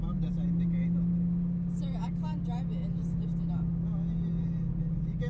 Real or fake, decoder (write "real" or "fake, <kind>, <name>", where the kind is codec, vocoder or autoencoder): real